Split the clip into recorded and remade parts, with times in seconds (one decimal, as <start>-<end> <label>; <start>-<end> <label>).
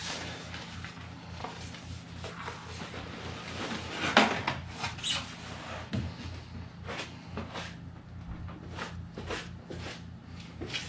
0.0-0.6 remade; 0.6-10.9 recorded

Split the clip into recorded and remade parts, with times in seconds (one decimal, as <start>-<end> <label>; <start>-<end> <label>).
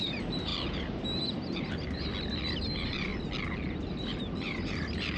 0.0-2.1 remade; 2.1-2.6 recorded; 2.6-3.1 remade; 3.1-3.7 recorded; 3.7-5.2 remade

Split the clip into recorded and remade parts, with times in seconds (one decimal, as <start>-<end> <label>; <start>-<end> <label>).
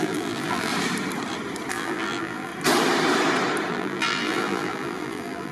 0.0-0.7 remade; 0.7-1.7 recorded; 1.7-2.5 remade; 2.5-3.7 recorded; 3.7-5.5 remade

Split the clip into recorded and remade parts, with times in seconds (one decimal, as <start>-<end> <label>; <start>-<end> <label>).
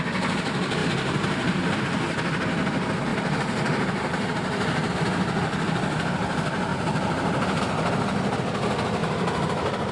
0.0-0.8 recorded; 0.8-1.8 remade; 1.8-3.1 recorded; 3.1-4.9 remade; 4.9-6.7 recorded; 6.7-7.6 remade; 7.6-9.0 recorded; 9.0-9.9 remade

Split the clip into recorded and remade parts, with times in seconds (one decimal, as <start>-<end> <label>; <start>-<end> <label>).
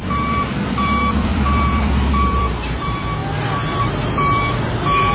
0.0-3.2 remade; 3.2-3.8 recorded; 3.8-5.1 remade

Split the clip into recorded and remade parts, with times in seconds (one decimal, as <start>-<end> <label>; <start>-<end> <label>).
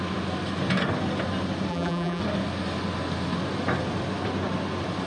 0.0-1.7 recorded; 1.7-2.2 remade; 2.2-5.1 recorded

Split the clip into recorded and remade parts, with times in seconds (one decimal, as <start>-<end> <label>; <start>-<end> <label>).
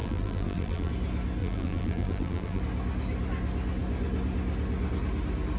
0.0-0.9 remade; 0.9-1.4 recorded; 1.4-2.6 remade; 2.6-5.6 recorded